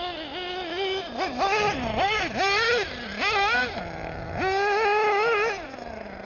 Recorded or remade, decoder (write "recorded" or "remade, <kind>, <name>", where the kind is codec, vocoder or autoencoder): recorded